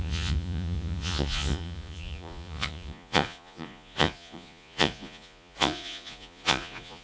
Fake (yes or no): yes